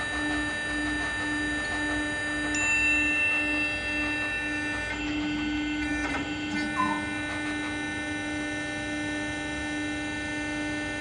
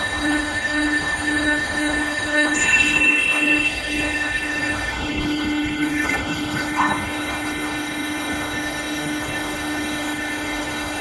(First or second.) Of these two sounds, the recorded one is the first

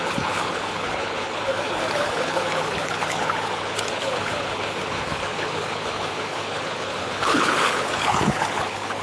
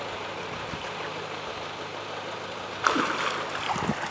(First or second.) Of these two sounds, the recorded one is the second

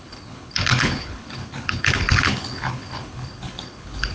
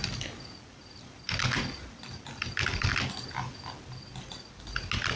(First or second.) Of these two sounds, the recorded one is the second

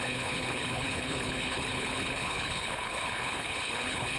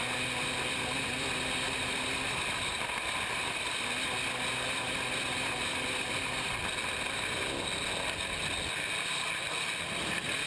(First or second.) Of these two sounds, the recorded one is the second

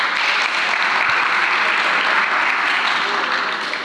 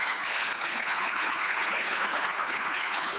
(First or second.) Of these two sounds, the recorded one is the first